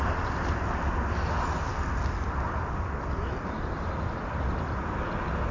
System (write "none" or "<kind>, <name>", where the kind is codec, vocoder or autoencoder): none